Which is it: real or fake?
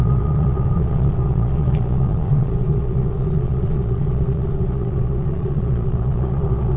fake